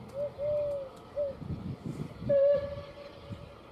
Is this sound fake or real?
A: real